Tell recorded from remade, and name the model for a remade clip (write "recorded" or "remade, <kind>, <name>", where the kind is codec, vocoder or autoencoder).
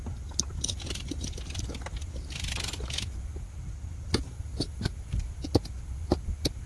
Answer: recorded